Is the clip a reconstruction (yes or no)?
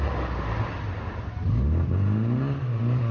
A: no